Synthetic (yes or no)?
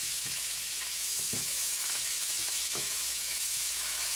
yes